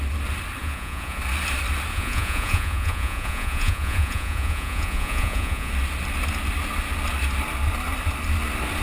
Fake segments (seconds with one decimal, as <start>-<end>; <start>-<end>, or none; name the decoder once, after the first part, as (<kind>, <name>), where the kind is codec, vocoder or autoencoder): 0.6-1.2 (vocoder, Vocos); 1.9-5.7